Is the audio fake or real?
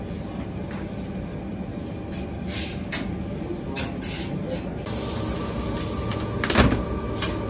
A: real